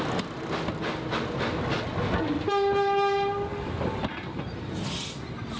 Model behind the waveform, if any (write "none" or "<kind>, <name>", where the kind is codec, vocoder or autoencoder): none